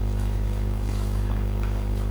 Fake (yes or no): yes